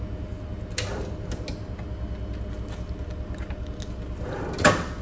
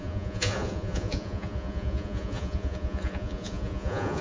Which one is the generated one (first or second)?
second